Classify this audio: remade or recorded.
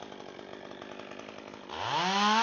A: recorded